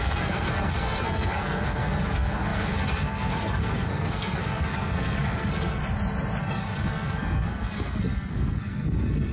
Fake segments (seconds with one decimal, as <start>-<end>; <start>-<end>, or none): 0.0-5.8; 6.4-9.3

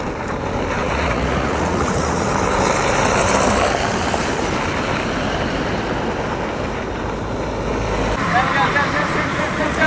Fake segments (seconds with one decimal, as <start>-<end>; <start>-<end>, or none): 0.8-2.2; 9.3-9.9

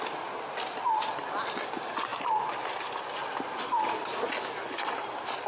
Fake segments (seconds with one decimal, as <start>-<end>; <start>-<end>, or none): none

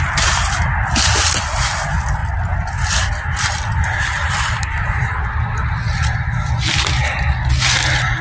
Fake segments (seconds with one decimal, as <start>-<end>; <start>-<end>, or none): none

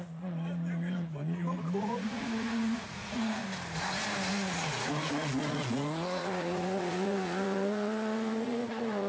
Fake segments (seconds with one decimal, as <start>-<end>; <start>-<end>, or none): 0.0-3.4; 4.3-9.1